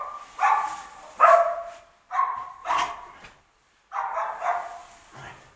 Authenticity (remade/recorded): recorded